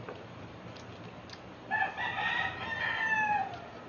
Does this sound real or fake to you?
real